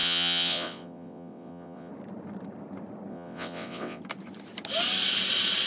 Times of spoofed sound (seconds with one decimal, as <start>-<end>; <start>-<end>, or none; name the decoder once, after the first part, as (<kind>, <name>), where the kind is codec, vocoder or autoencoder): 0.0-1.9 (vocoder, WaveNeXt); 3.1-4.0